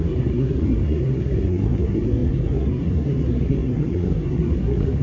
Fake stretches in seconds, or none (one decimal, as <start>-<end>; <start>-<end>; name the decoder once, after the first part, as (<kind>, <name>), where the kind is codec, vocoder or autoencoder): 0.0-5.0 (codec, SNAC)